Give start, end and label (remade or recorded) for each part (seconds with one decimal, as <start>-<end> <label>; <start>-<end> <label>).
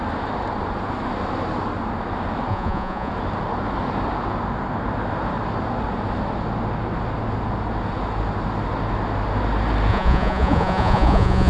0.0-2.5 recorded; 2.5-3.1 remade; 3.1-9.9 recorded; 9.9-11.5 remade